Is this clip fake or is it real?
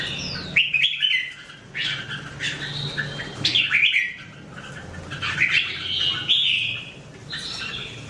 real